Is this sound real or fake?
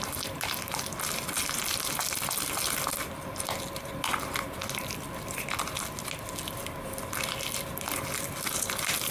real